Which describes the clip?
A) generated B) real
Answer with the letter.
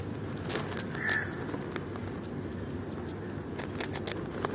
B